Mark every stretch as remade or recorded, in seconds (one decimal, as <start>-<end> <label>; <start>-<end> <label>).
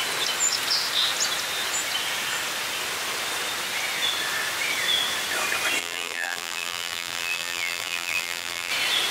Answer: 0.0-5.8 recorded; 5.8-8.7 remade; 8.7-9.1 recorded